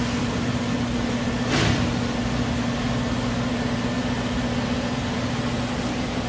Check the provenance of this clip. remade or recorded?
recorded